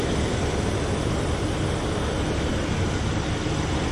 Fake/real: real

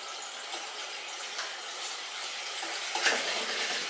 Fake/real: real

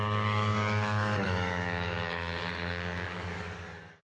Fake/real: fake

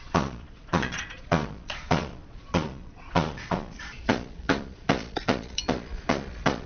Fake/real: fake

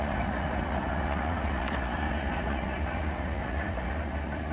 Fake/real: fake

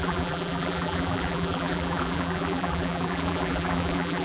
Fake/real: fake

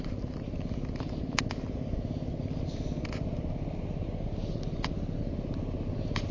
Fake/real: real